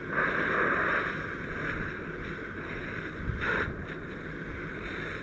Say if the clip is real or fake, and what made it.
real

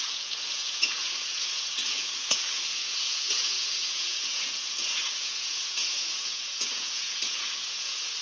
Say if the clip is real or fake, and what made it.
fake, vocoder, Vocos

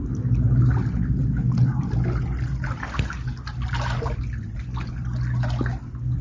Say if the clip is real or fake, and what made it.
real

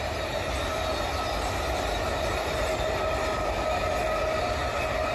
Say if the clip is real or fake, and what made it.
real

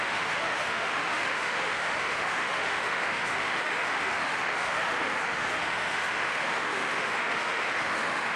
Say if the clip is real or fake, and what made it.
fake, autoencoder, DAC-VAE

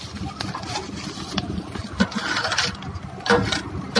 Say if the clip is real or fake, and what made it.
real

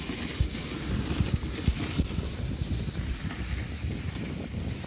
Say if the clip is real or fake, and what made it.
real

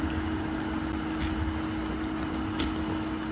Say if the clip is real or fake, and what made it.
real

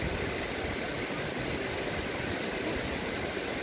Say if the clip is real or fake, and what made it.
real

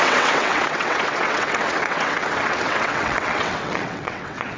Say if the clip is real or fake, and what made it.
fake, vocoder, WaveNeXt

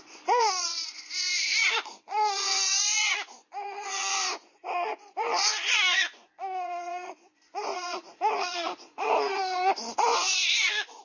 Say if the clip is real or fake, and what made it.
fake, vocoder, Vocos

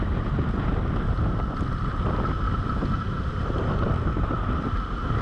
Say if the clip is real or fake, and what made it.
real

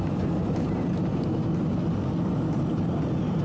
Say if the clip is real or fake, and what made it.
real